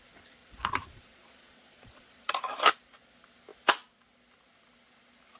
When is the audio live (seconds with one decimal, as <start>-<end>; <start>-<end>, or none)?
0.0-0.4; 2.4-5.4